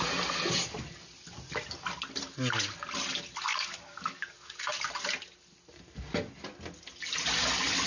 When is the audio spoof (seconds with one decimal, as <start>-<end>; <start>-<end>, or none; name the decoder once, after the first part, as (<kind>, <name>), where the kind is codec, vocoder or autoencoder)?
3.5-4.6 (codec, DAC)